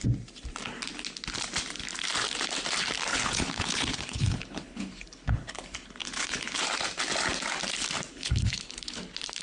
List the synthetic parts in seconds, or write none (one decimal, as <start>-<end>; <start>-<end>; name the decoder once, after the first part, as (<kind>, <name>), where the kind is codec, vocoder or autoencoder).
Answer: 3.1-6.6 (codec, HILCodec); 8.1-9.0